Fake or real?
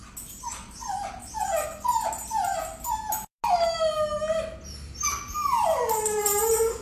real